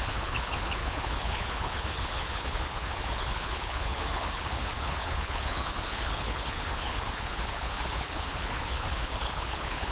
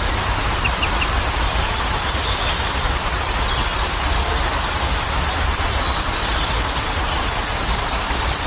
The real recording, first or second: second